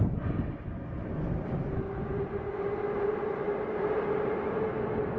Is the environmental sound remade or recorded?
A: recorded